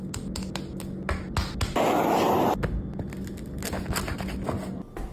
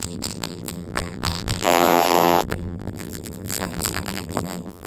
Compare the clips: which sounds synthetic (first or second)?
second